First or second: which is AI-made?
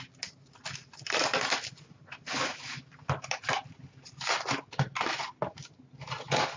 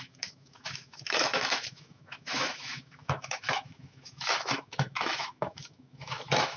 second